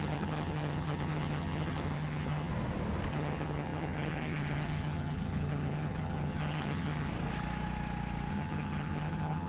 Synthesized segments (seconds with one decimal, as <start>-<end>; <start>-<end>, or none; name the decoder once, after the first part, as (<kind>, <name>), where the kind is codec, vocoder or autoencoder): 0.0-2.5 (vocoder, HiFi-GAN); 3.1-7.1; 8.3-9.5